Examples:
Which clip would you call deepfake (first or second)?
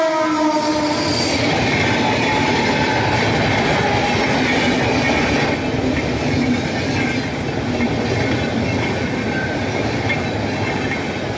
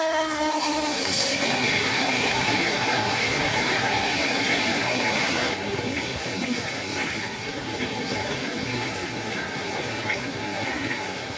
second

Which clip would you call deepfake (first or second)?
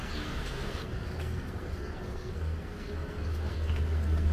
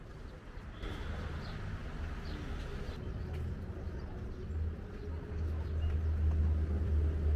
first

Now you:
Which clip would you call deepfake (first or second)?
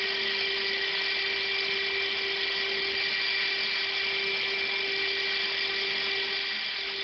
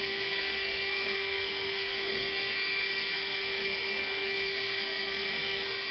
second